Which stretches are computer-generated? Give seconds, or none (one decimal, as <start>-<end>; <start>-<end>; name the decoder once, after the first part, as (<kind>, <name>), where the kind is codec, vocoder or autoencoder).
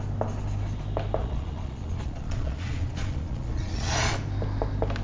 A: 1.2-4.1 (vocoder, Vocos)